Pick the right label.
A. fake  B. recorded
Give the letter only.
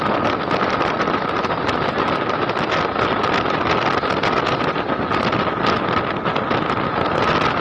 B